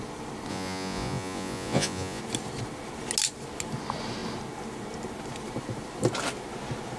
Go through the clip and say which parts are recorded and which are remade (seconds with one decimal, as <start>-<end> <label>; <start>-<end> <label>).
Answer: 0.0-0.5 recorded; 0.5-2.2 remade; 2.2-7.0 recorded